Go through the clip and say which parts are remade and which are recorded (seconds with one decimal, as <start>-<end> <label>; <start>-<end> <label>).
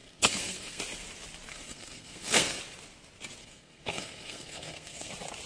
0.0-0.8 remade; 0.8-1.5 recorded; 1.5-2.6 remade; 2.6-3.4 recorded; 3.4-5.1 remade; 5.1-5.5 recorded